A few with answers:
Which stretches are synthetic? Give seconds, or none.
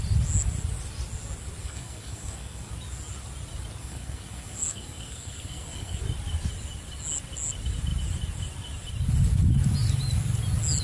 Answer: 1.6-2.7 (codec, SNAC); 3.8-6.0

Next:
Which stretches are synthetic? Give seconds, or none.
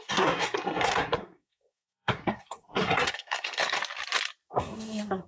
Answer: 0.0-3.8 (codec, SNAC); 4.5-5.3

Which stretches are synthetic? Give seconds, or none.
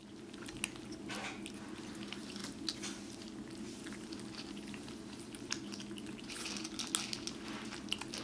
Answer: none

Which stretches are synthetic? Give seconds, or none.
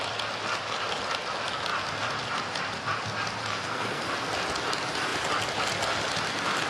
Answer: 3.4-4.1 (codec, SNAC)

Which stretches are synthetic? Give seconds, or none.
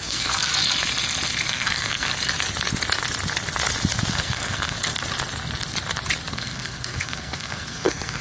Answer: 0.0-0.5 (codec, SNAC); 1.5-2.1; 4.1-4.9; 6.3-8.2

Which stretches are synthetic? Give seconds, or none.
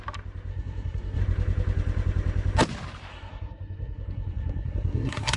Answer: 0.5-1.2 (codec, SNAC); 3.1-5.4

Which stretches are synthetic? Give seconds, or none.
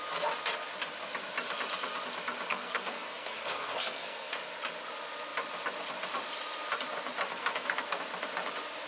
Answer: 2.5-4.3 (codec, SNAC); 7.3-8.0